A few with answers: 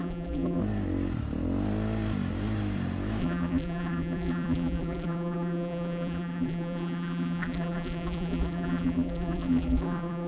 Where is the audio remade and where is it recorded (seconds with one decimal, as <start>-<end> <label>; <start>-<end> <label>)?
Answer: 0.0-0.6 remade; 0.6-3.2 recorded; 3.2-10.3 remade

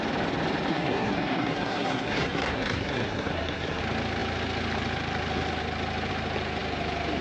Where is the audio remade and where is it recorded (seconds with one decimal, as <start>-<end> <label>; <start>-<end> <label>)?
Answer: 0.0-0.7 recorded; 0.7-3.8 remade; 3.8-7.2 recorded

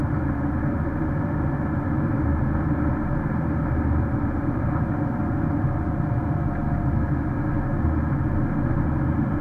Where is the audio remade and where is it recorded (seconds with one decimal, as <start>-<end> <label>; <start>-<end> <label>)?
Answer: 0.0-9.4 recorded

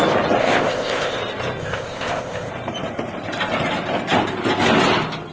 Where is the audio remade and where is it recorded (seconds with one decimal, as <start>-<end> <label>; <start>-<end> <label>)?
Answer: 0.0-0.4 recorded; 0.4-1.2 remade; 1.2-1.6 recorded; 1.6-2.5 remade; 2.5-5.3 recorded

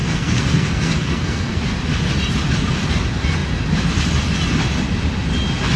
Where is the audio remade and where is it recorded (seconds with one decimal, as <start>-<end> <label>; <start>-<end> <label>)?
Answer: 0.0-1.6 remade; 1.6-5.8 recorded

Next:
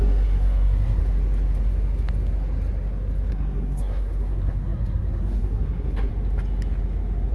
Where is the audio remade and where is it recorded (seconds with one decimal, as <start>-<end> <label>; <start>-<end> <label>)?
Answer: 0.0-1.0 remade; 1.0-3.3 recorded; 3.3-6.1 remade; 6.1-7.3 recorded